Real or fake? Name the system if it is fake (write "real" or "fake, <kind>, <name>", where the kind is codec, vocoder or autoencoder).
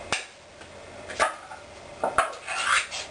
real